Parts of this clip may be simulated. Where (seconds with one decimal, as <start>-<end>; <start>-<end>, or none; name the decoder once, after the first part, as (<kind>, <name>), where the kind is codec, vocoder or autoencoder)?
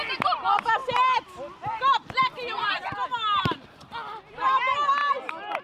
none